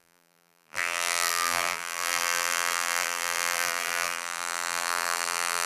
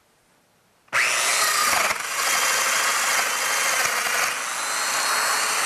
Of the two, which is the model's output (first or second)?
first